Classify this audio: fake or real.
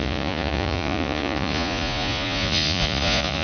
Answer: fake